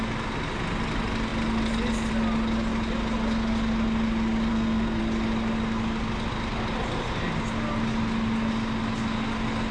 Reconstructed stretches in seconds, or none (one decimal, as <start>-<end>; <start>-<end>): 4.5-5.0